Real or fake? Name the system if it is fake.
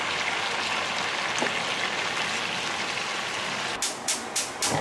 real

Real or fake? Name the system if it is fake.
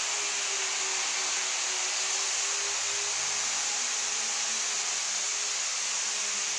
real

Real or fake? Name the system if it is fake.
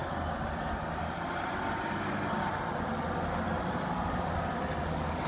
real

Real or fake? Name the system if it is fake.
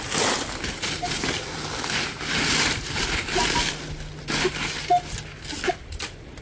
real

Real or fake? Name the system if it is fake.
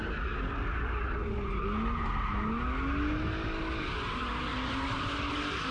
real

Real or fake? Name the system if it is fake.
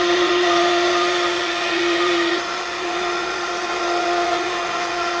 fake, vocoder, Vocos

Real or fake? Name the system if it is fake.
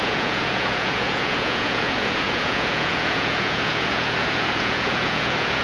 fake, vocoder, Vocos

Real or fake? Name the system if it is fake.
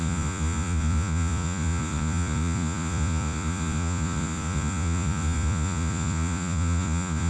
fake, vocoder, Vocos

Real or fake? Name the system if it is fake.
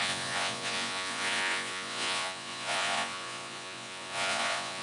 fake, vocoder, Vocos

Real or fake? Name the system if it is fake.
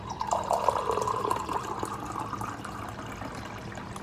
real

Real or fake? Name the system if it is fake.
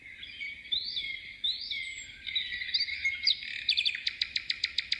real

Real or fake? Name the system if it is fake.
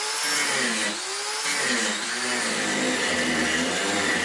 real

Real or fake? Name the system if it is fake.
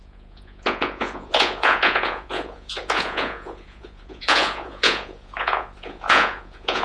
fake, vocoder, Vocos